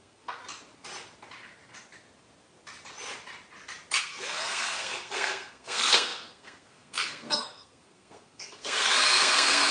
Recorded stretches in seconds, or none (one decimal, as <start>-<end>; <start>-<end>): 0.4-4.0